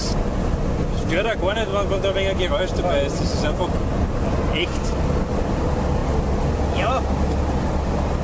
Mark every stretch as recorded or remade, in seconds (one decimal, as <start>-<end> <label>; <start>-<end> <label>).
0.0-8.2 recorded